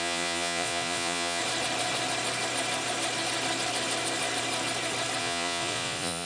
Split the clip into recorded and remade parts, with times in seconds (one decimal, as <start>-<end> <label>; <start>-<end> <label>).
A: 0.0-1.4 remade; 1.4-5.2 recorded; 5.2-6.3 remade